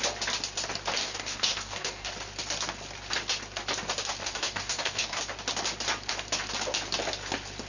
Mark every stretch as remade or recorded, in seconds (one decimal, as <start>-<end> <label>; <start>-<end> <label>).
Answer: 0.0-1.0 recorded; 1.0-2.1 remade; 2.1-4.2 recorded; 4.2-5.2 remade; 5.2-7.7 recorded

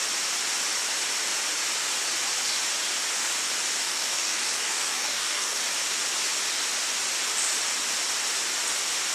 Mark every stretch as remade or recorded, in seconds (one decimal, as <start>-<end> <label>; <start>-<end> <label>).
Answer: 0.0-3.8 recorded; 3.8-5.6 remade; 5.6-9.1 recorded

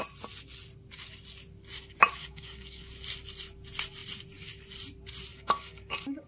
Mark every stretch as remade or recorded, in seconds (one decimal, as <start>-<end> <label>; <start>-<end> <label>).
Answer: 0.0-2.2 recorded; 2.2-2.8 remade; 2.8-5.3 recorded; 5.3-6.3 remade

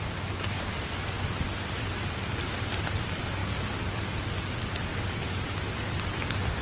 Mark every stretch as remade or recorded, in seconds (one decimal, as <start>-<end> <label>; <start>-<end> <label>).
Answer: 0.0-3.4 recorded; 3.4-4.5 remade; 4.5-6.6 recorded

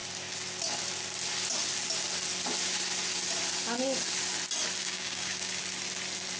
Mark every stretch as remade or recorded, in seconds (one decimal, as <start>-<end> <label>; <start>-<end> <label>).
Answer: 0.0-4.8 recorded; 4.8-5.6 remade; 5.6-6.4 recorded

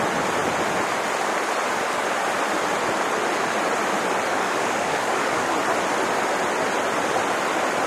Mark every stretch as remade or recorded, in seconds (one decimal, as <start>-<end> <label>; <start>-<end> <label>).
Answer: 0.0-4.3 recorded; 4.3-5.5 remade; 5.5-7.9 recorded

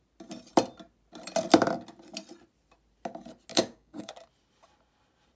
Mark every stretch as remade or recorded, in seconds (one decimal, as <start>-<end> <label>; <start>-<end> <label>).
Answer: 0.0-3.5 recorded; 3.5-4.1 remade; 4.1-5.4 recorded

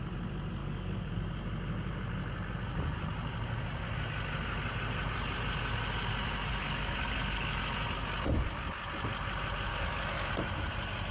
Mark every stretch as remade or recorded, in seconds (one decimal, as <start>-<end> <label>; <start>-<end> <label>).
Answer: 0.0-0.6 recorded; 0.6-1.1 remade; 1.1-6.5 recorded; 6.5-7.6 remade; 7.6-9.7 recorded; 9.7-10.3 remade; 10.3-11.1 recorded